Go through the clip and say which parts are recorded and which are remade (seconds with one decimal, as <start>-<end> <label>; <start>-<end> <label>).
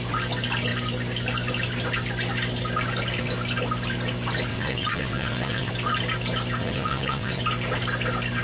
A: 0.0-4.5 recorded; 4.5-5.7 remade; 5.7-6.6 recorded; 6.6-7.4 remade; 7.4-8.4 recorded